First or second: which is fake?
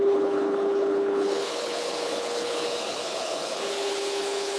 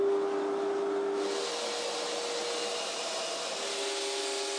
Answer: first